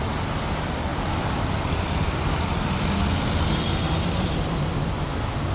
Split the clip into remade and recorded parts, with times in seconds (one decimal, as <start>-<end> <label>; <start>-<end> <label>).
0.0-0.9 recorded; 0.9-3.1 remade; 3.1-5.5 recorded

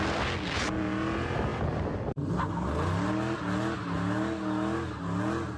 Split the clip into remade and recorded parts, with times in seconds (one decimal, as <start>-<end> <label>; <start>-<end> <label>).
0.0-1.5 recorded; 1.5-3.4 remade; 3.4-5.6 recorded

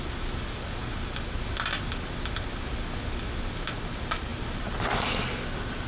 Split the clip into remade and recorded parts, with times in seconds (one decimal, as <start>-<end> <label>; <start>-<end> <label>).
0.0-5.9 recorded

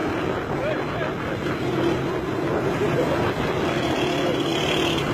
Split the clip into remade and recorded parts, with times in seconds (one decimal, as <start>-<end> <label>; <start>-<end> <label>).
0.0-5.1 recorded